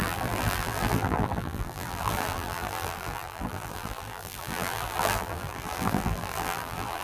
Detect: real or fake fake